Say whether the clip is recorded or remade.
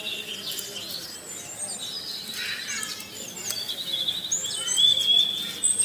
recorded